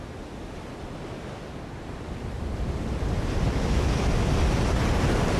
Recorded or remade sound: recorded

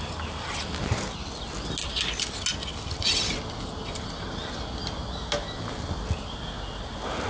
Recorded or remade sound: recorded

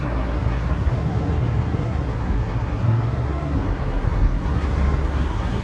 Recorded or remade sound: remade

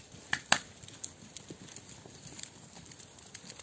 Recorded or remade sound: recorded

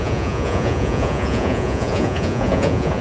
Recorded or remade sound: remade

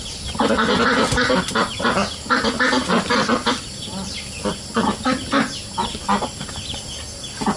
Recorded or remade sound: recorded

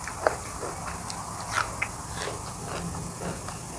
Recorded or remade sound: recorded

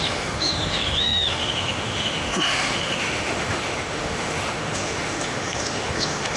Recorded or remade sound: remade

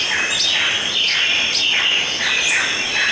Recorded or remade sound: recorded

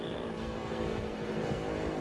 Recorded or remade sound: remade